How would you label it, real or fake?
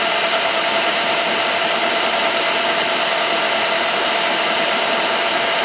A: fake